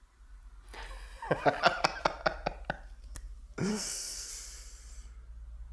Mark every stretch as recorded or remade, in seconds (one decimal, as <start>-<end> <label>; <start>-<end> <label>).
0.0-3.7 recorded; 3.7-4.3 remade; 4.3-5.7 recorded